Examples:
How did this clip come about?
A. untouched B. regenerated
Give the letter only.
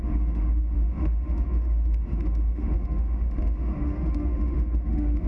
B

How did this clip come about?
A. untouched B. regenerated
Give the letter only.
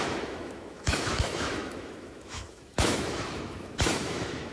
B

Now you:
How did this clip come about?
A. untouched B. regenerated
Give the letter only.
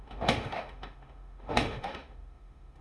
B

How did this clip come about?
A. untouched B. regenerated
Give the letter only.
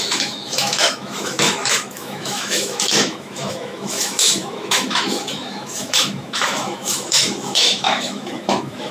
B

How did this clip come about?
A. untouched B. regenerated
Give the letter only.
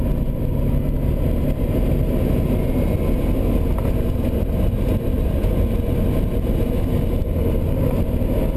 A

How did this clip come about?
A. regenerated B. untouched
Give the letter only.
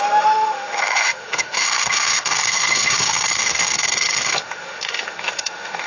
A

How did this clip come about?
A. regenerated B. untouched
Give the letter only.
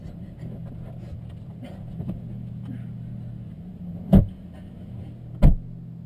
B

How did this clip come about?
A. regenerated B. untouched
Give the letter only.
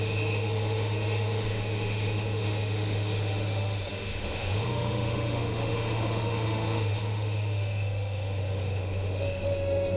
A